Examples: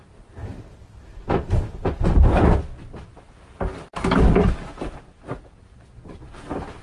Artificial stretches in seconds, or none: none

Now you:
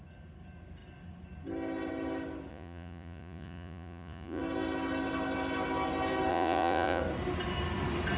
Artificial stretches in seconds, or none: 2.5-4.4 (vocoder, Vocos); 6.3-7.0

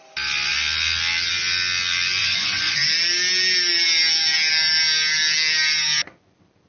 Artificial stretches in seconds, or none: 2.2-2.8 (vocoder, Vocos)

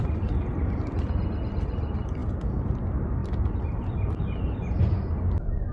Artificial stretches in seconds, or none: none